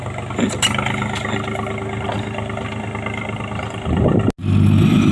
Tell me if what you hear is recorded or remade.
recorded